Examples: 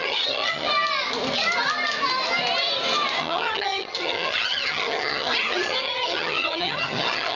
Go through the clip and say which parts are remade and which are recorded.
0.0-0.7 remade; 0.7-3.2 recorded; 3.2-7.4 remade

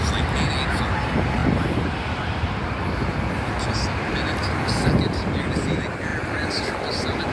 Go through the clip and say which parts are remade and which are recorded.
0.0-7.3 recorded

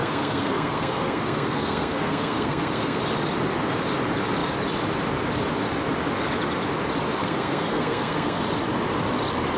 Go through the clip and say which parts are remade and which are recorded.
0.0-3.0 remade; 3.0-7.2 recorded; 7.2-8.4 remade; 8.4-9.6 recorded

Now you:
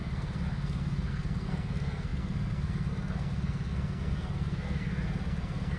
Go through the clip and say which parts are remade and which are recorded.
0.0-5.8 remade

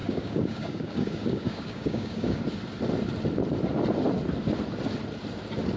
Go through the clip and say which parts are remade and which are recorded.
0.0-2.4 remade; 2.4-5.8 recorded

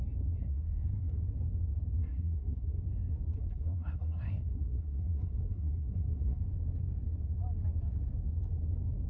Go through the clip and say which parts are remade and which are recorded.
0.0-0.4 recorded; 0.4-1.2 remade; 1.2-2.0 recorded; 2.0-2.8 remade; 2.8-3.4 recorded; 3.4-6.4 remade; 6.4-9.1 recorded